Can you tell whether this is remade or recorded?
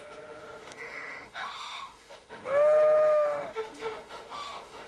remade